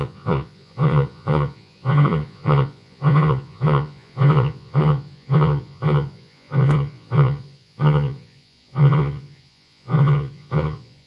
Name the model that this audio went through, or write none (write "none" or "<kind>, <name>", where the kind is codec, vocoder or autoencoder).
vocoder, Vocos